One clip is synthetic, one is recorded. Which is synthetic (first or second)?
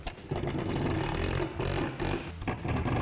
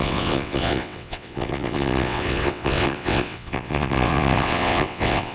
second